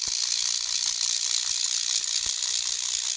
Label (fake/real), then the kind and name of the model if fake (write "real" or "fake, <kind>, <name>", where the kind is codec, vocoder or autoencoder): real